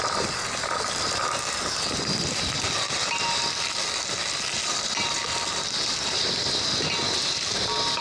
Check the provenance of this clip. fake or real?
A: real